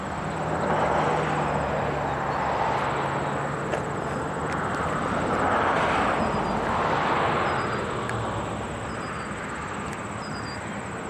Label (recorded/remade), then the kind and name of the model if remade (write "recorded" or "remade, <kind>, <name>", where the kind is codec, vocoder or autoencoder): recorded